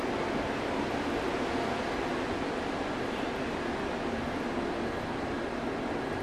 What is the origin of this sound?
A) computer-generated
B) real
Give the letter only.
B